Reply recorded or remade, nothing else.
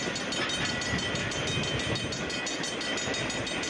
recorded